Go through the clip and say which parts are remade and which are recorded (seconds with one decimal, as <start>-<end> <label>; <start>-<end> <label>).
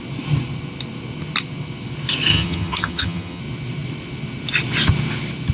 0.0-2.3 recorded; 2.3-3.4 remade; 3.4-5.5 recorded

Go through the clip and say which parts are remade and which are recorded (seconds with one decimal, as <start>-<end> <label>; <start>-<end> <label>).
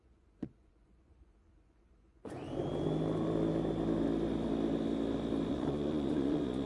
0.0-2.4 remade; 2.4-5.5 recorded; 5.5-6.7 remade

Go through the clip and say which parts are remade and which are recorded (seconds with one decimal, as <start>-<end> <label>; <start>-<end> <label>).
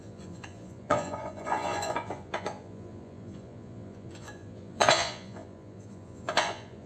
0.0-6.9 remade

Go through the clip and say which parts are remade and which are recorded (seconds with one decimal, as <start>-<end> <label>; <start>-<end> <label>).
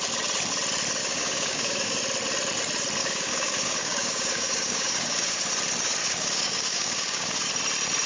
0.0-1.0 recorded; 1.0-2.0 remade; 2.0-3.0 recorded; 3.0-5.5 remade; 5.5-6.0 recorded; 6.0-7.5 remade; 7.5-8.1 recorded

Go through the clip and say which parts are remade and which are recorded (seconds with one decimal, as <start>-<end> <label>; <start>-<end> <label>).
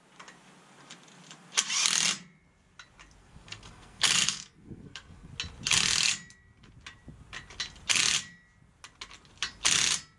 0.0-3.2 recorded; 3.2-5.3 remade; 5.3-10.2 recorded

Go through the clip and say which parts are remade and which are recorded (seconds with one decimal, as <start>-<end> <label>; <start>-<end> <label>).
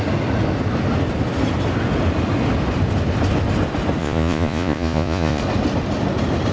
0.0-4.0 recorded; 4.0-5.4 remade; 5.4-6.5 recorded